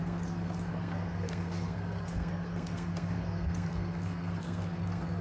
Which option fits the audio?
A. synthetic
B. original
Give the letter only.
A